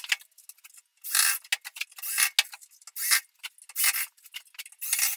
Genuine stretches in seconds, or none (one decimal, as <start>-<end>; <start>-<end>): 0.0-5.2